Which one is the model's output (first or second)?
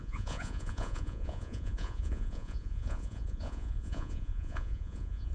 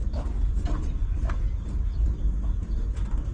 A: first